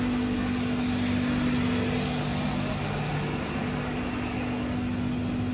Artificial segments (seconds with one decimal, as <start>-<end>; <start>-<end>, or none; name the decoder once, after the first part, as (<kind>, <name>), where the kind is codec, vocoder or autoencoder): none